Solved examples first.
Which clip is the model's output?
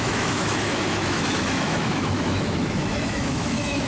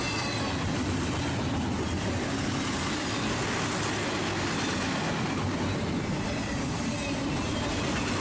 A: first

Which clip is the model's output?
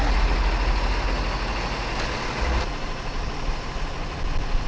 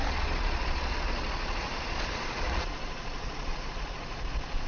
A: second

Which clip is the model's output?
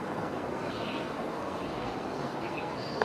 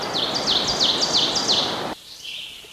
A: first